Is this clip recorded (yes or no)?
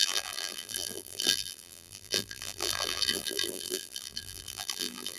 no